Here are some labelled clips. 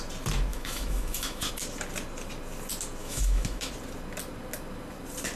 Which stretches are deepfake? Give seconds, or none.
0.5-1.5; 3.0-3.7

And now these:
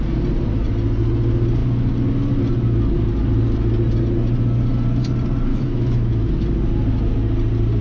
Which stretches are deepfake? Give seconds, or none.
5.5-6.3

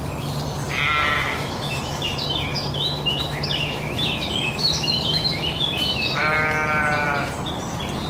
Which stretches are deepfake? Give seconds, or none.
1.3-6.2

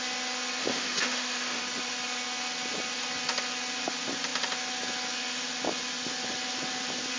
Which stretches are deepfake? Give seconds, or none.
0.6-1.6